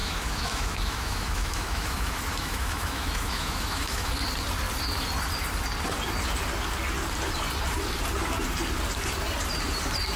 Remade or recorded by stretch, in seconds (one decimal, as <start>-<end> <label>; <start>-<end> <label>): 0.0-4.1 remade; 4.1-10.2 recorded